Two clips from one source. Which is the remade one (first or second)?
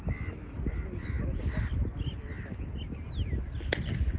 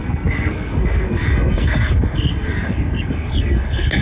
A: second